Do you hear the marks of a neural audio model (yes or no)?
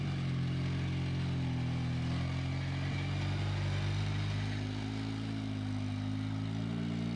no